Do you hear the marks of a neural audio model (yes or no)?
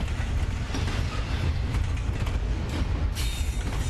no